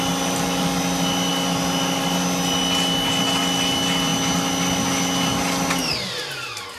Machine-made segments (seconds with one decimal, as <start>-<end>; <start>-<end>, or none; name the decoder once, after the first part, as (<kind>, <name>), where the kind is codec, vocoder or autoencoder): none